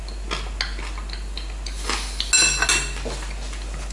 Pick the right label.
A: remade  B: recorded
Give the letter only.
B